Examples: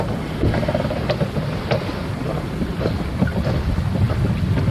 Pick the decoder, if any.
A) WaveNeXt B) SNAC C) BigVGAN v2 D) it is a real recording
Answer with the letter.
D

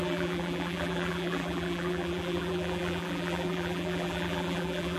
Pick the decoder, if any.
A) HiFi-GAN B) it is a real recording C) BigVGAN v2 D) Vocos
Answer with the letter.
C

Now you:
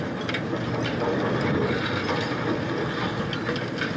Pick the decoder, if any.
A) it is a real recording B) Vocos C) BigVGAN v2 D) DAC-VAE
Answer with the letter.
A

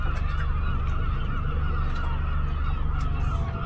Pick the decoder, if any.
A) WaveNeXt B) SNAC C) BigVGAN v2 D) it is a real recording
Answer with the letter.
D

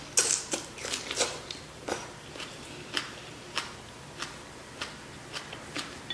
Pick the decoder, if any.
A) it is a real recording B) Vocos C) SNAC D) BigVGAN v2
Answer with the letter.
A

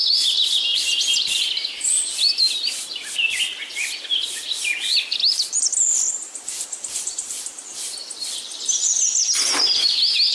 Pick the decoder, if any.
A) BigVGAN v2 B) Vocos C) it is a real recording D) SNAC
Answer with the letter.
A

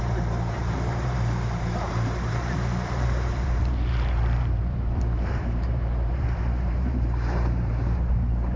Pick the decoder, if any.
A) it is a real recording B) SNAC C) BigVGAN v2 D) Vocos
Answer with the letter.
C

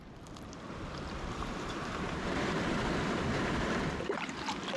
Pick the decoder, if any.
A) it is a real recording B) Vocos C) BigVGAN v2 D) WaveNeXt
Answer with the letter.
C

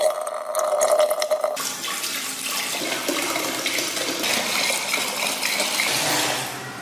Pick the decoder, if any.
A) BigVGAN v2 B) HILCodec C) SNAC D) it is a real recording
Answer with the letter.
D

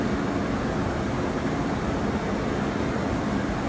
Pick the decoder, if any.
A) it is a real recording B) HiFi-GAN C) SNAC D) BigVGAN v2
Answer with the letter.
A